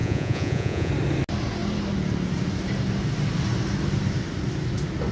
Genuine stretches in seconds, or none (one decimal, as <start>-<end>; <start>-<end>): 0.9-5.1